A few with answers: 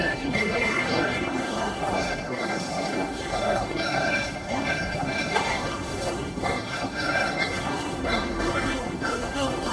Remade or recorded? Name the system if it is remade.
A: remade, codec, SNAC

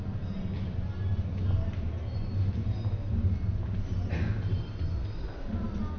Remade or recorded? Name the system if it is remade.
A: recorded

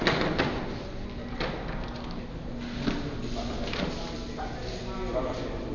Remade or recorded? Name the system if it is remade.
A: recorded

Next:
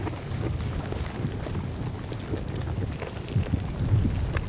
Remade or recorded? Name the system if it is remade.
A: recorded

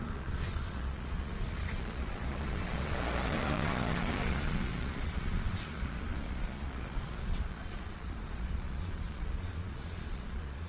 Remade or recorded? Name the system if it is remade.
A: remade, vocoder, Vocos